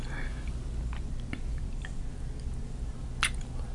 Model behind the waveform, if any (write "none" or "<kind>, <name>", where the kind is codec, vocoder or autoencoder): none